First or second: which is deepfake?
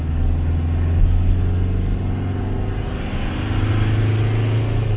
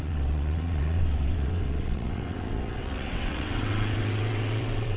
second